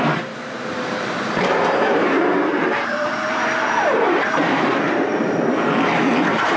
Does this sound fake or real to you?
fake